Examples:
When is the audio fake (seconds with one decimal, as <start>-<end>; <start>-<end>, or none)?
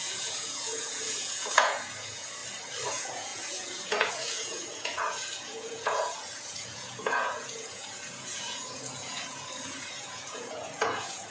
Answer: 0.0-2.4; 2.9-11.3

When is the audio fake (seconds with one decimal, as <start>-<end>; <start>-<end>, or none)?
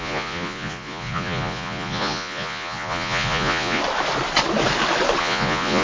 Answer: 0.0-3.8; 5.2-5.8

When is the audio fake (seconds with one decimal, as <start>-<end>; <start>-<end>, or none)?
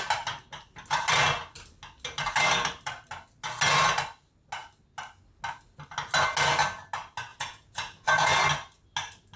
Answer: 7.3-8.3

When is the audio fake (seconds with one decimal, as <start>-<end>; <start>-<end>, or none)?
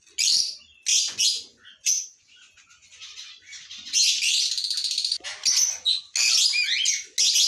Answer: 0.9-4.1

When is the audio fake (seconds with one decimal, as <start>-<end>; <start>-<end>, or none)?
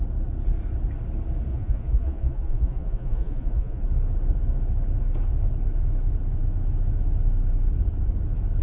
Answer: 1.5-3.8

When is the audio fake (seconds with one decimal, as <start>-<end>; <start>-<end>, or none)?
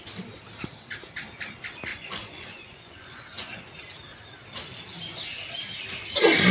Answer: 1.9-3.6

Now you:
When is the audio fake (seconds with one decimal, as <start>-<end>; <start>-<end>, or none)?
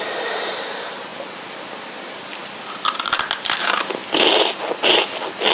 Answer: none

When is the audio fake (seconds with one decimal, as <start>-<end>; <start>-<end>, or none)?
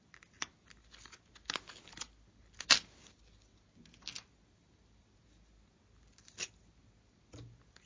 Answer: none